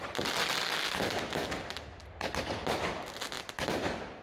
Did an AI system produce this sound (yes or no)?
no